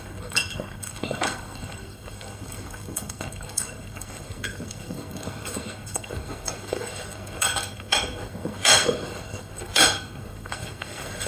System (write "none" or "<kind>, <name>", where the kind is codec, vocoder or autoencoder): codec, SNAC